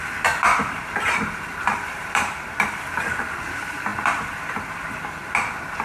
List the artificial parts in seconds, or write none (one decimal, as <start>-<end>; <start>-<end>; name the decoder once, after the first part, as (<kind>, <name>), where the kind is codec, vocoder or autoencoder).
0.5-2.8 (vocoder, BigVGAN v2)